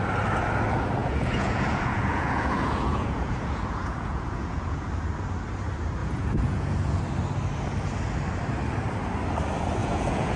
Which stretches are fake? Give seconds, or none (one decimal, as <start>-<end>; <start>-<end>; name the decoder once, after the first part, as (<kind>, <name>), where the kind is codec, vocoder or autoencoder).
1.0-4.9 (vocoder, Vocos); 6.0-7.0; 9.8-10.4